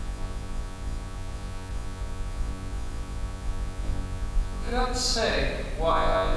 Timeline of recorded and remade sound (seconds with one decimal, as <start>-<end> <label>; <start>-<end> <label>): 0.0-4.7 remade; 4.7-5.9 recorded; 5.9-6.4 remade